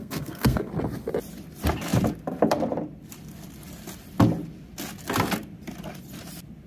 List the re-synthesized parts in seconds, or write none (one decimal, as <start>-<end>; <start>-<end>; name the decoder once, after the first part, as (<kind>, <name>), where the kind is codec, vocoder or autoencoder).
0.0-0.7 (codec, SNAC)